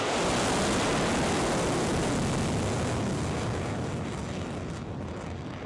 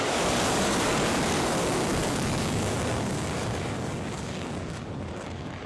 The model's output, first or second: second